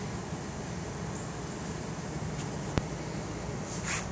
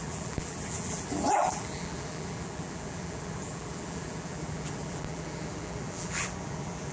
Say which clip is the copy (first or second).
second